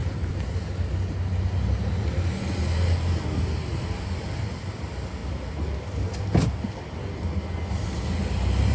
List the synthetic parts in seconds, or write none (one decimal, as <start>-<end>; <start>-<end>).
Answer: 0.0-0.5